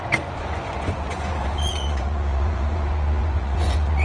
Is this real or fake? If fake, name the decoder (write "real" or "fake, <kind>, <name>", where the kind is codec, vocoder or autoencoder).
fake, vocoder, Vocos